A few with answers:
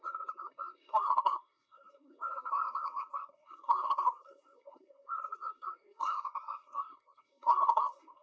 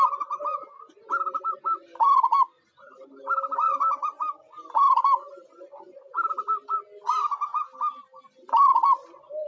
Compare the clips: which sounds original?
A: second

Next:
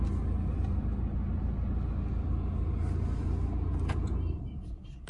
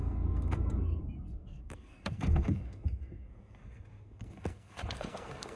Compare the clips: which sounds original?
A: first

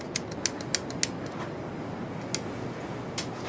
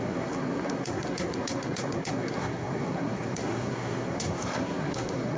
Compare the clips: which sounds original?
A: first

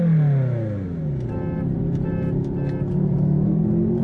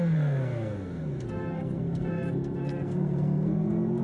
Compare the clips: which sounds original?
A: first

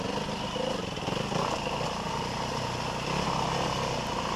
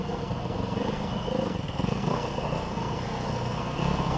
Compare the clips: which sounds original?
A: first